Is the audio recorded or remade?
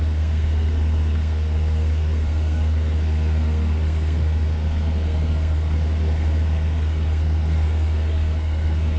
remade